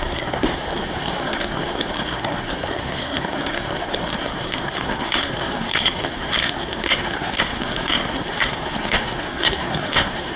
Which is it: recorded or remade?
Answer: remade